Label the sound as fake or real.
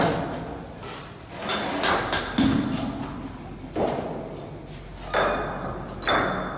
real